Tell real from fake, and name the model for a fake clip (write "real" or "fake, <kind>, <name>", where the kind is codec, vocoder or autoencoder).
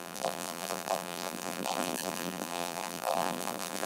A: fake, vocoder, BigVGAN v2